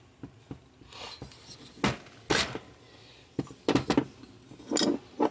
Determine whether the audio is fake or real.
real